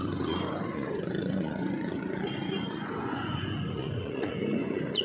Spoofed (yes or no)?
yes